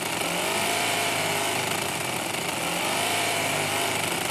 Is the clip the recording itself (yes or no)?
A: yes